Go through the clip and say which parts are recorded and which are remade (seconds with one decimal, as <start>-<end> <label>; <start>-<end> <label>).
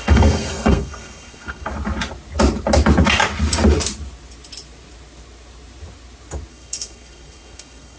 0.0-1.7 remade; 1.7-6.5 recorded; 6.5-8.0 remade